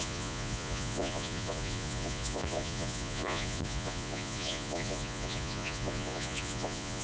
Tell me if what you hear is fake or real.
fake